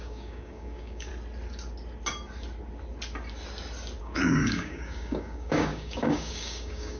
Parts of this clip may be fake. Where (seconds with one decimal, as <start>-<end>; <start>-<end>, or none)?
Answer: 0.0-1.1; 4.0-7.0